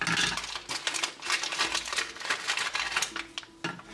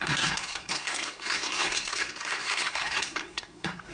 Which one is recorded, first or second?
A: first